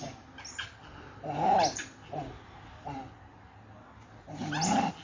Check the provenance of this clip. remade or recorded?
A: recorded